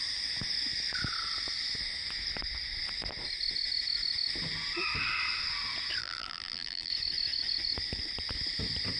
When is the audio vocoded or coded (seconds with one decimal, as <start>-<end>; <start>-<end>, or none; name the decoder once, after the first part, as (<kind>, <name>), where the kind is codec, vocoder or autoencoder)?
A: 6.0-6.9 (vocoder, BigVGAN v2)